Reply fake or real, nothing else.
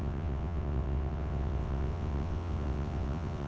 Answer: fake